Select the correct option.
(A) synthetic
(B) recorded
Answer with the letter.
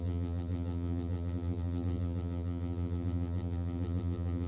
A